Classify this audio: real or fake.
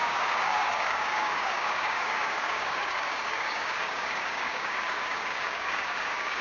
fake